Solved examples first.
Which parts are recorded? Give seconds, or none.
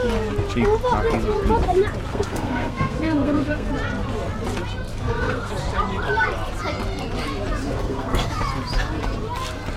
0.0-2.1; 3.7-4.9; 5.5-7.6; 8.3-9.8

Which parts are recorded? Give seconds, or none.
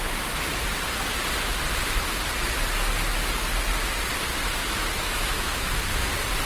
0.0-4.6; 5.7-6.5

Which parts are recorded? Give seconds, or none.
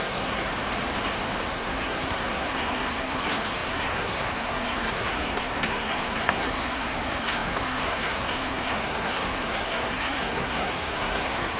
0.5-1.5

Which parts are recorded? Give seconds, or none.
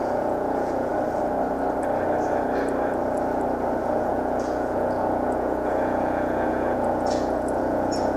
0.9-3.8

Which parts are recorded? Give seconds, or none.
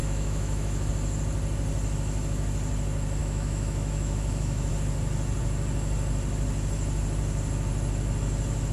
0.9-3.2; 4.7-8.7